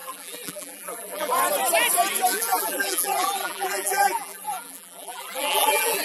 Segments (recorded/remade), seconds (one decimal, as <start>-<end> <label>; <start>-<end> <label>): 0.0-1.3 remade; 1.3-2.3 recorded; 2.3-6.0 remade

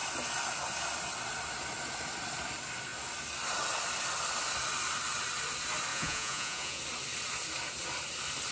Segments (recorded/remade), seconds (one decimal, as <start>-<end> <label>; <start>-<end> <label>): 0.0-5.9 recorded; 5.9-6.8 remade; 6.8-8.5 recorded